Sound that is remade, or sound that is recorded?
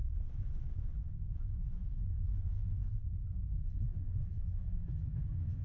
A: remade